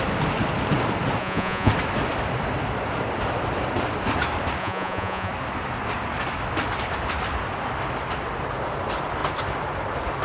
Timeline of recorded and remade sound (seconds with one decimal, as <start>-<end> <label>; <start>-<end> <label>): 0.0-1.2 recorded; 1.2-1.7 remade; 1.7-4.6 recorded; 4.6-5.3 remade; 5.3-10.2 recorded